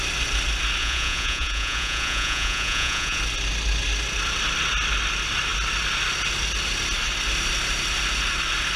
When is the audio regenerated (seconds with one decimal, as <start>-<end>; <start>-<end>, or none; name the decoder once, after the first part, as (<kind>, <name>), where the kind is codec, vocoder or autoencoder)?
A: 0.8-3.2 (vocoder, Vocos)